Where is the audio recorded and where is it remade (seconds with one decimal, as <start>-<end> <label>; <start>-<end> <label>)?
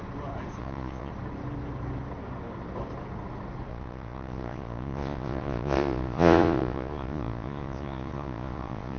0.0-0.6 recorded; 0.6-1.1 remade; 1.1-3.7 recorded; 3.7-9.0 remade